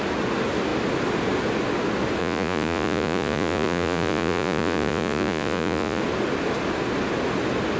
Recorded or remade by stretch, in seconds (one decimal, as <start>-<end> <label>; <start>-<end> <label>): 0.0-2.2 recorded; 2.2-6.0 remade; 6.0-7.8 recorded